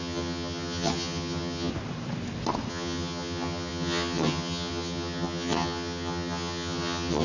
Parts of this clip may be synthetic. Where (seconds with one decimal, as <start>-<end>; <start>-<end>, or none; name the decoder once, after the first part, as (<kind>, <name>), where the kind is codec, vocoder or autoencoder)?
0.0-1.7 (vocoder, HiFi-GAN); 2.7-7.2